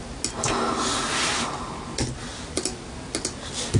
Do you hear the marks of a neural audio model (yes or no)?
no